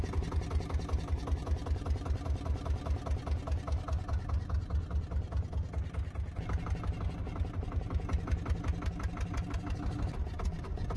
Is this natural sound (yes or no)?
yes